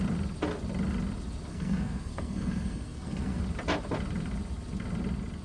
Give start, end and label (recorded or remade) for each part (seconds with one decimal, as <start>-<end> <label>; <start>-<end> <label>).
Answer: 0.0-1.5 recorded; 1.5-3.4 remade; 3.4-5.4 recorded